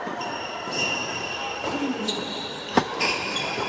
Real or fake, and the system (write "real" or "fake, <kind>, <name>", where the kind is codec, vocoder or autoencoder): fake, vocoder, BigVGAN v2